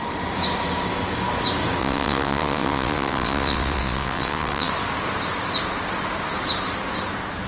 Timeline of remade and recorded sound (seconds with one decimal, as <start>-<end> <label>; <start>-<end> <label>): 0.0-1.8 recorded; 1.8-4.7 remade; 4.7-7.5 recorded